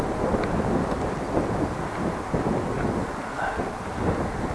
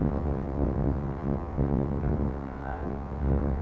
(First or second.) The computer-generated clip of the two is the second